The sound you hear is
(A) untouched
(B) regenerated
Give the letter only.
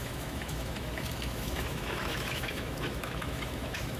B